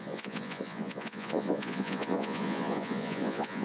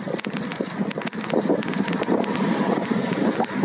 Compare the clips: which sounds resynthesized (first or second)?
first